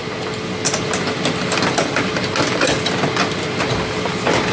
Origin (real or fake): real